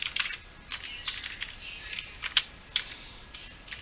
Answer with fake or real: real